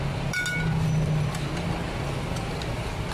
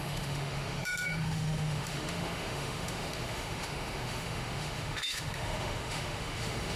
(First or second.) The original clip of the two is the first